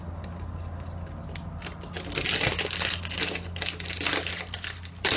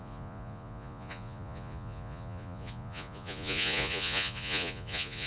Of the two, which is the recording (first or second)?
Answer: first